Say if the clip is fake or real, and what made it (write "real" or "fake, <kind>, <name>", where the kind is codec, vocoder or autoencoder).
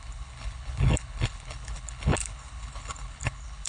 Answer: fake, codec, HILCodec